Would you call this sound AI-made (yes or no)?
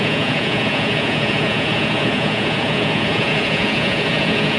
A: yes